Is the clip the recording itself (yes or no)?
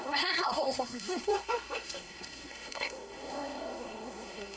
no